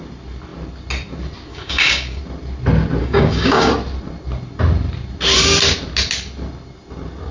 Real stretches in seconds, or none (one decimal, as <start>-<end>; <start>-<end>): 0.0-1.5; 2.2-3.0; 3.7-7.3